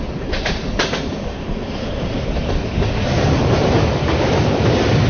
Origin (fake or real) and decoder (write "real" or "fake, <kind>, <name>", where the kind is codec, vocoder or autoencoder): real